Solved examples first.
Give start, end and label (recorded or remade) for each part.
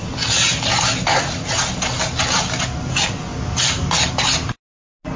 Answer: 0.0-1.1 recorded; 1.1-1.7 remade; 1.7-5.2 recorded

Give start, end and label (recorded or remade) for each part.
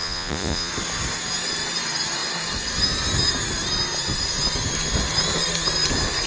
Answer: 0.0-0.7 remade; 0.7-6.3 recorded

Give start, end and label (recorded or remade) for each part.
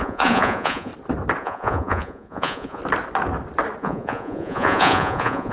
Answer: 0.0-0.9 remade; 0.9-1.4 recorded; 1.4-2.8 remade; 2.8-3.8 recorded; 3.8-5.5 remade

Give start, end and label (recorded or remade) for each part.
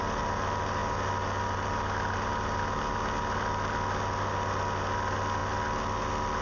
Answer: 0.0-6.4 recorded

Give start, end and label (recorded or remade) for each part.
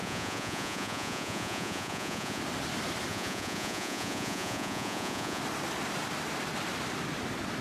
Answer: 0.0-2.4 remade; 2.4-3.1 recorded; 3.1-5.4 remade; 5.4-7.6 recorded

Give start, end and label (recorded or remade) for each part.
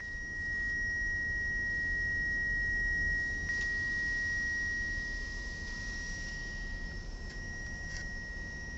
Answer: 0.0-8.8 recorded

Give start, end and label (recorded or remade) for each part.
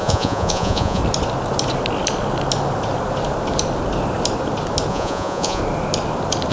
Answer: 0.0-1.0 remade; 1.0-4.9 recorded; 4.9-5.6 remade; 5.6-6.5 recorded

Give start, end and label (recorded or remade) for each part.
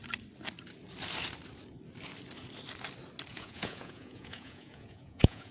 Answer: 0.0-3.3 recorded; 3.3-5.5 remade